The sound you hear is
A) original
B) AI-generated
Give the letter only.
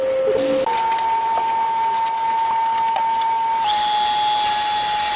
A